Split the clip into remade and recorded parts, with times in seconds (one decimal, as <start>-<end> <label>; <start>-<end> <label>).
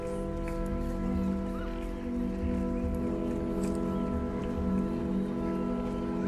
0.0-6.3 recorded